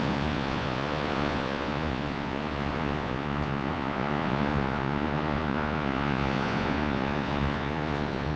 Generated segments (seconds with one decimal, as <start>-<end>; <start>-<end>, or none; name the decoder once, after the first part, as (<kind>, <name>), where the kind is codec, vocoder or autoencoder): 0.0-8.4 (vocoder, Vocos)